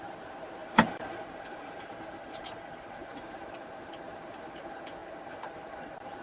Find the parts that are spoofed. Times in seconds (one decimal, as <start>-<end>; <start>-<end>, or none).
0.6-3.5